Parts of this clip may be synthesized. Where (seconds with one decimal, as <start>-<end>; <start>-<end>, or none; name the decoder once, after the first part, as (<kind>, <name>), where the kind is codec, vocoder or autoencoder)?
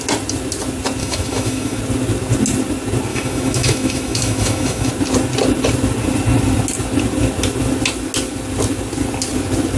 1.0-1.8 (autoencoder, DAC-VAE); 3.1-4.9